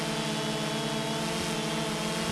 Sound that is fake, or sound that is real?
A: real